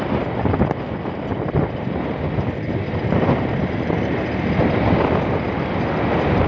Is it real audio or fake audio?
real